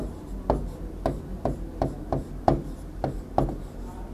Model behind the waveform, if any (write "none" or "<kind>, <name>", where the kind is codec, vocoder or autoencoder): none